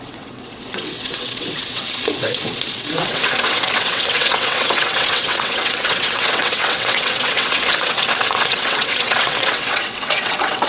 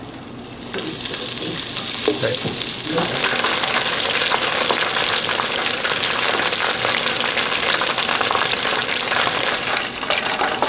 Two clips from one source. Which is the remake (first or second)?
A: first